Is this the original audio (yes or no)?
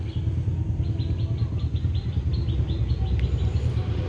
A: yes